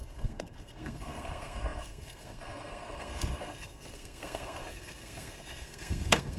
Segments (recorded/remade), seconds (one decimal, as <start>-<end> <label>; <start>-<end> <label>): 0.0-6.4 remade